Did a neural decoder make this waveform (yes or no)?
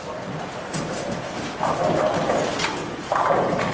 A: no